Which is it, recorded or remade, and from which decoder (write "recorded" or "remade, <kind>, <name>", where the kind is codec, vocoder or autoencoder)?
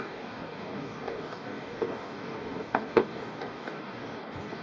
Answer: remade, codec, DAC